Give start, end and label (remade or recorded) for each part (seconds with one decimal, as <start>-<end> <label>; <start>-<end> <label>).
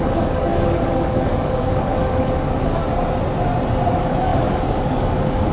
0.0-2.8 remade; 2.8-3.9 recorded; 3.9-5.5 remade